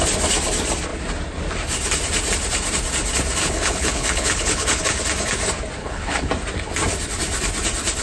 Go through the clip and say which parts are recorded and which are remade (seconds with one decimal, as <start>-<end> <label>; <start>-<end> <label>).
0.0-3.4 recorded; 3.4-4.8 remade; 4.8-5.8 recorded; 5.8-6.3 remade; 6.3-8.0 recorded

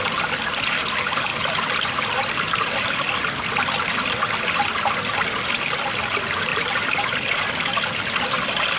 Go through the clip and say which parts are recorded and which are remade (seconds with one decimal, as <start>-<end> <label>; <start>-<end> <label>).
0.0-1.3 recorded; 1.3-1.9 remade; 1.9-6.5 recorded; 6.5-8.2 remade; 8.2-8.8 recorded

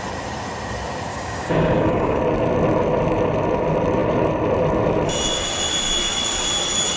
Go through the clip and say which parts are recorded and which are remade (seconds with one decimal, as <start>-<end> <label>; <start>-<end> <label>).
0.0-1.1 recorded; 1.1-2.2 remade; 2.2-7.0 recorded

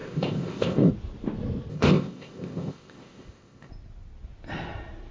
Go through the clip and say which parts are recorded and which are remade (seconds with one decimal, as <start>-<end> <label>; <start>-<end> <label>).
0.0-0.9 remade; 0.9-1.7 recorded; 1.7-3.7 remade; 3.7-5.1 recorded

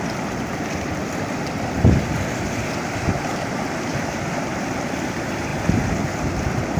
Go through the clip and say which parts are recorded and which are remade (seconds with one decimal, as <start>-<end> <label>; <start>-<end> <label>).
0.0-6.8 recorded

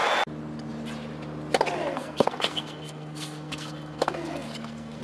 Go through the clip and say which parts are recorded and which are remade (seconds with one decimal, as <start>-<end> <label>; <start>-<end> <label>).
0.0-1.9 recorded; 1.9-5.0 remade